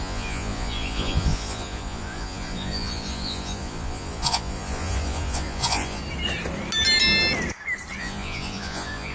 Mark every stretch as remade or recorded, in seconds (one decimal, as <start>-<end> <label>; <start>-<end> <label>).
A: 0.0-6.0 remade; 6.0-8.0 recorded; 8.0-9.1 remade

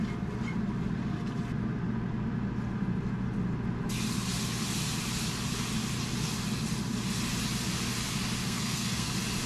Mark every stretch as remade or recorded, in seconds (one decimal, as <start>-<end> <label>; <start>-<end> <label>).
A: 0.0-8.4 recorded; 8.4-9.1 remade; 9.1-9.5 recorded

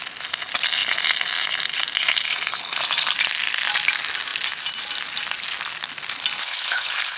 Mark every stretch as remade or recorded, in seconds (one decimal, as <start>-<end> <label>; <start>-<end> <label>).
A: 0.0-6.4 recorded; 6.4-7.2 remade

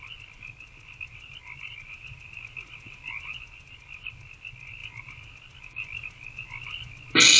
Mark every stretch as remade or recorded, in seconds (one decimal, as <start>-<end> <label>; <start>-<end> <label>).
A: 0.0-7.4 recorded

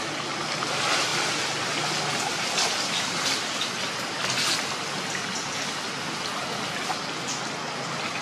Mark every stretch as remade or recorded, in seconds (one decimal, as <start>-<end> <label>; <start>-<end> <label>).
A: 0.0-8.2 recorded

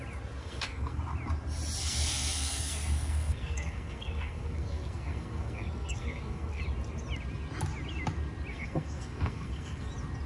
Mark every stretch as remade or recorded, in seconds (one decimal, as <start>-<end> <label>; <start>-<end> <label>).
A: 0.0-0.4 recorded; 0.4-1.0 remade; 1.0-1.8 recorded; 1.8-6.6 remade; 6.6-8.5 recorded; 8.5-9.9 remade; 9.9-10.3 recorded